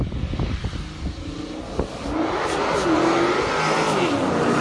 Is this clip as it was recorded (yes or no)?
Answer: yes